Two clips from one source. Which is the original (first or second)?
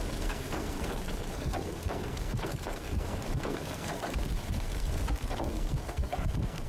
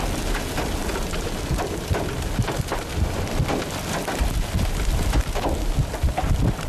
second